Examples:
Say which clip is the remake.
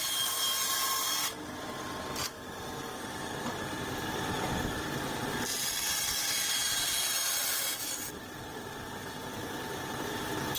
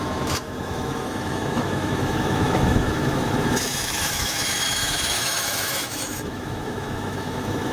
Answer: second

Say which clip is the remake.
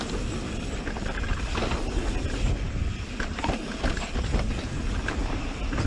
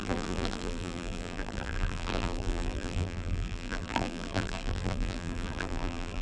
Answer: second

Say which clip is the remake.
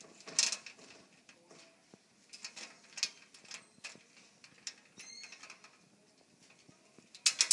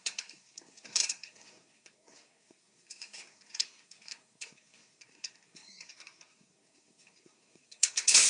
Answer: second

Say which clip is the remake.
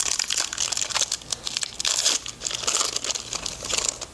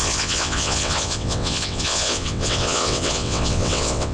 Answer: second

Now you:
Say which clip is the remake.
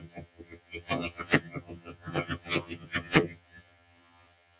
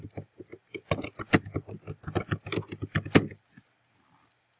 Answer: first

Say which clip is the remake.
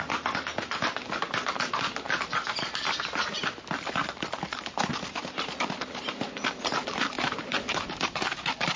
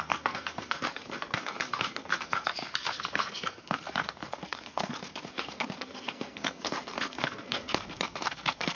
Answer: second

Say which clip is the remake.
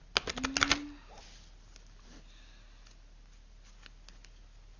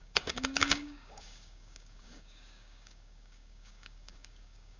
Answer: second